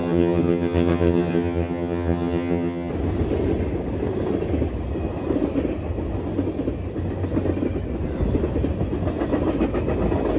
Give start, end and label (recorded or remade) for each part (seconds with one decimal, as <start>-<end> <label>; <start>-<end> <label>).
0.0-2.9 remade; 2.9-10.4 recorded